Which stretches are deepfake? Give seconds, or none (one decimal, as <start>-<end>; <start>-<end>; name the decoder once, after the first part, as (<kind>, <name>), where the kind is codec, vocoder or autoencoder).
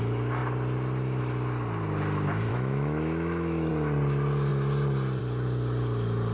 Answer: 2.5-3.7 (autoencoder, DAC-VAE)